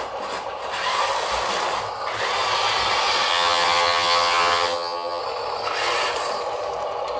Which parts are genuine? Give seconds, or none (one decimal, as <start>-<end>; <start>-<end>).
0.0-3.3; 5.2-7.2